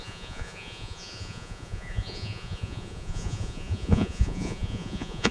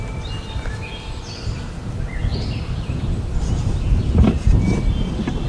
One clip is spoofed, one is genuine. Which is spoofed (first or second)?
first